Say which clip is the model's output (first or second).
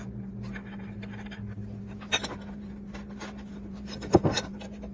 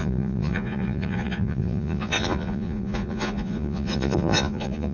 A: second